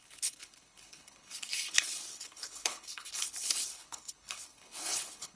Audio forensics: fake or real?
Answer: fake